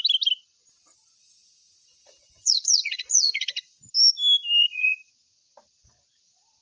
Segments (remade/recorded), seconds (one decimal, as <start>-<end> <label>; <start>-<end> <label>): 0.0-1.2 recorded; 1.2-3.9 remade; 3.9-4.6 recorded; 4.6-5.1 remade; 5.1-6.6 recorded